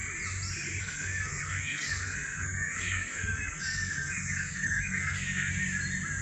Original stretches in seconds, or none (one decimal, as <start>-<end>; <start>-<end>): 0.0-0.8; 5.5-6.2